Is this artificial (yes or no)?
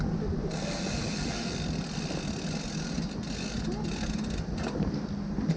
no